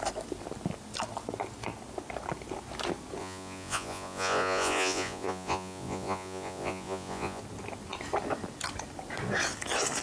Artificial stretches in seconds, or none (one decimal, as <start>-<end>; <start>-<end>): 3.2-7.4

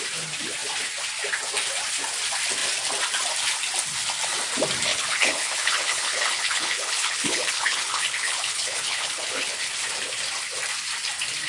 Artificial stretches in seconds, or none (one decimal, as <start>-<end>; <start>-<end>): 4.9-9.7

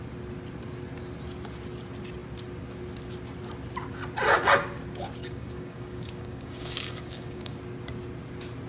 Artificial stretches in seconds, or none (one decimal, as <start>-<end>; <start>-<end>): 5.2-7.6

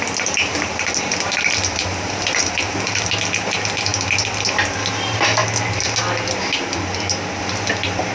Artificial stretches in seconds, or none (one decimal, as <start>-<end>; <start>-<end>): 0.0-3.9; 4.5-5.4; 7.4-8.1

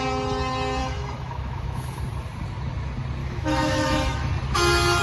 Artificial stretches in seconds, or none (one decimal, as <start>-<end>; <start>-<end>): 0.8-2.0; 3.2-4.3

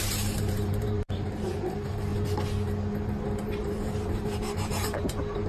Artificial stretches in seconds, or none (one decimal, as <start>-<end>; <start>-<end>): 0.0-2.1; 3.6-5.5

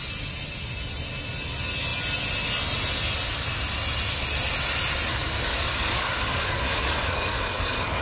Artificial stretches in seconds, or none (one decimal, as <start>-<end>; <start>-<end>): 5.1-8.0

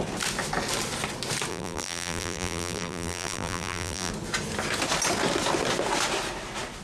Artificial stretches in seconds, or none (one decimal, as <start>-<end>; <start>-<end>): 1.5-4.1